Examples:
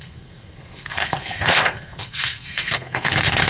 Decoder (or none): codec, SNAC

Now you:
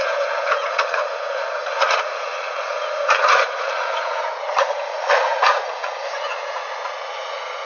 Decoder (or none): vocoder, Vocos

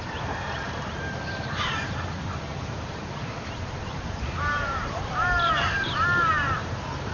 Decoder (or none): vocoder, BigVGAN v2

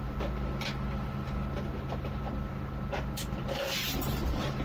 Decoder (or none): none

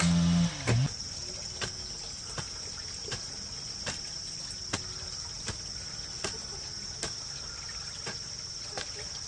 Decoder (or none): none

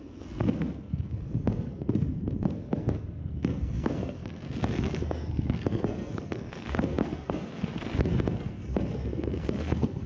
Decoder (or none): codec, SNAC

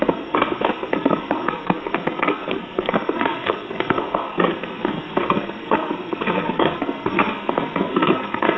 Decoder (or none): codec, SNAC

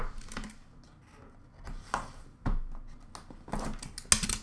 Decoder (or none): none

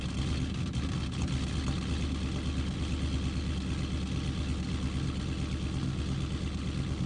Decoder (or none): none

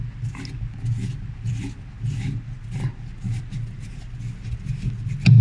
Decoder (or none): none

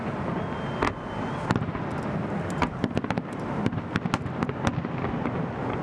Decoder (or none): none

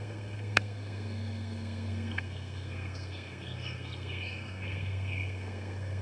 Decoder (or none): codec, SNAC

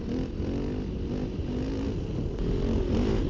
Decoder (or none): none